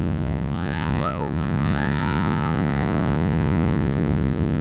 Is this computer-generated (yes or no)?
yes